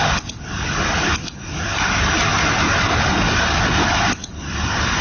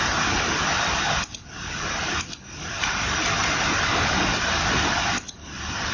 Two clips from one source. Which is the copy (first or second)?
second